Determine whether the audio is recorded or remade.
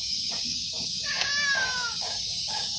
remade